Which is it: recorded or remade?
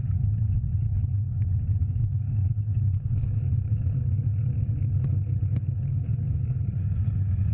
remade